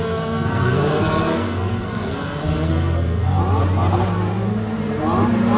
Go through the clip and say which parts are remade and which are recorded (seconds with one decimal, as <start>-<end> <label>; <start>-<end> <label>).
0.0-3.4 remade; 3.4-5.6 recorded